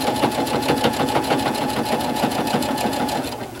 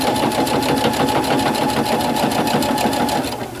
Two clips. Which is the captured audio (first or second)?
second